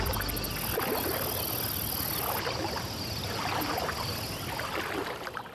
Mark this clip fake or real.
real